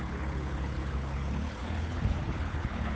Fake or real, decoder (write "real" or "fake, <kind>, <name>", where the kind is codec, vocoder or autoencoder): fake, codec, HILCodec